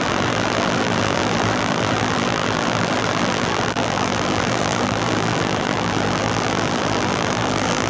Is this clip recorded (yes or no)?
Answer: no